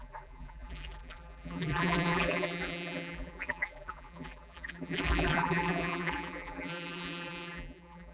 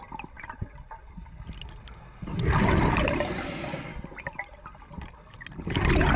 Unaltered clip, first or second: second